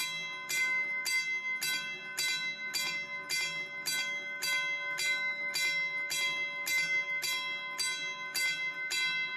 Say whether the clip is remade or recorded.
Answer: recorded